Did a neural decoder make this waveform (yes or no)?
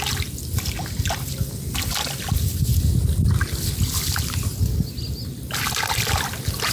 no